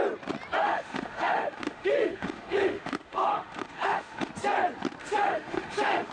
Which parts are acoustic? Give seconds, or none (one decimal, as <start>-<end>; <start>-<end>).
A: 0.0-0.6; 4.3-5.0